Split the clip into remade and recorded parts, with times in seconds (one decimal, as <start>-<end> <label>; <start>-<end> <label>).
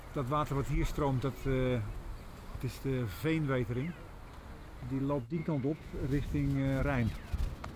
0.0-5.4 recorded; 5.4-6.8 remade; 6.8-7.8 recorded